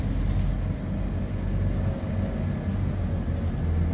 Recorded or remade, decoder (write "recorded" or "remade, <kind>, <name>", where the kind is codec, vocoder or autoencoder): recorded